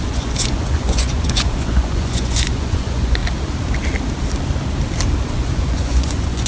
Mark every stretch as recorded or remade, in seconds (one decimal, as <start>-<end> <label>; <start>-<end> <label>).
0.0-3.2 remade; 3.2-5.3 recorded; 5.3-6.5 remade

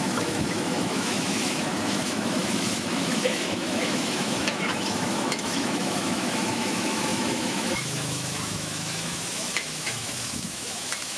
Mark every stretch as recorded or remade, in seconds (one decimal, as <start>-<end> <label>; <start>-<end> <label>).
0.0-11.2 remade